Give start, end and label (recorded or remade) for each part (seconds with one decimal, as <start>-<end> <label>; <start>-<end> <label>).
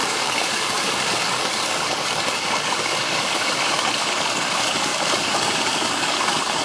0.0-6.6 remade